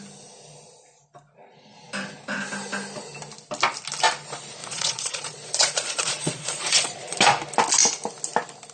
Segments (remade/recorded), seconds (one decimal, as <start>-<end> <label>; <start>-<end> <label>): 0.0-4.6 recorded; 4.6-7.2 remade; 7.2-8.7 recorded